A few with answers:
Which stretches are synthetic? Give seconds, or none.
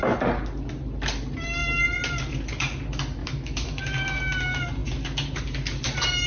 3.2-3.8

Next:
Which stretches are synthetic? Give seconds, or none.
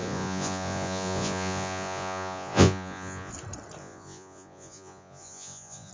0.0-3.3; 3.8-5.9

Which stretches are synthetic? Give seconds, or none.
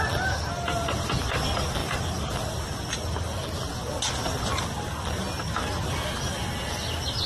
none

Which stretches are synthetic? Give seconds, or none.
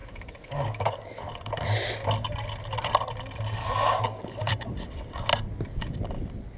0.0-1.2; 3.6-4.2